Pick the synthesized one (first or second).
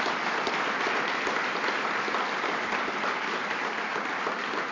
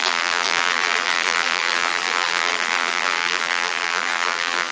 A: second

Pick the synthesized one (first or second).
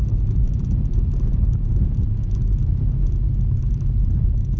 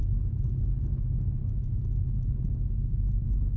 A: first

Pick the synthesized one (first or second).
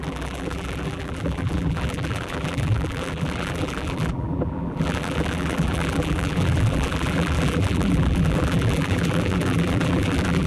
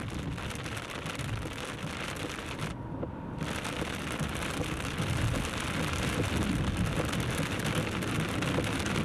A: first